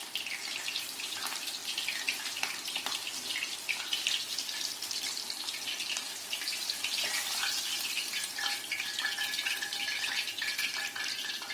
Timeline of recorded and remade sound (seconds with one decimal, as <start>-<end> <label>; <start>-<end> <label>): 0.0-1.6 recorded; 1.6-2.4 remade; 2.4-11.5 recorded